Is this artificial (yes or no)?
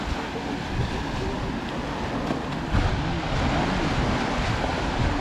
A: no